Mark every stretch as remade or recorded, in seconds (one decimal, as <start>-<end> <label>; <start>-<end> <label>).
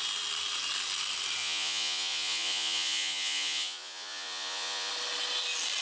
0.0-1.4 recorded; 1.4-4.9 remade; 4.9-5.8 recorded